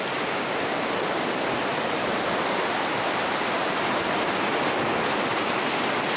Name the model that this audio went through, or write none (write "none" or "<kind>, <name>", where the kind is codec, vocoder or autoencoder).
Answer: none